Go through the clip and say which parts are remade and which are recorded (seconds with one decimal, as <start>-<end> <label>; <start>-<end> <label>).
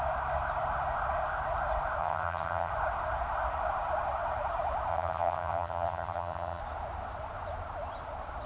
0.0-2.0 recorded; 2.0-2.7 remade; 2.7-4.9 recorded; 4.9-6.6 remade; 6.6-8.5 recorded